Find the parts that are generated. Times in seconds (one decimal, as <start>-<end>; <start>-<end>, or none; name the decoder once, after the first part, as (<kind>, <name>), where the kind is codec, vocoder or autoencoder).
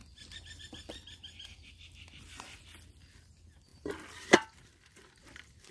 none